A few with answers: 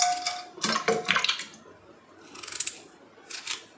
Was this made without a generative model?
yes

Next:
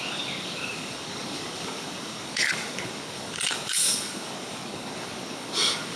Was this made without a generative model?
no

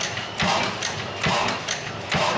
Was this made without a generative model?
yes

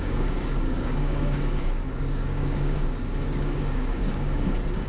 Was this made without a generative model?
no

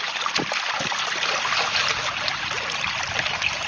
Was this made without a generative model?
yes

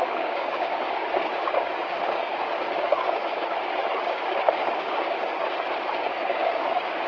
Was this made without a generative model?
no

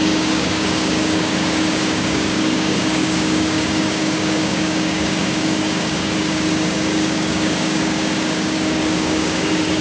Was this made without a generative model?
no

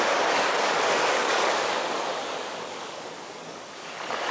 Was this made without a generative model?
no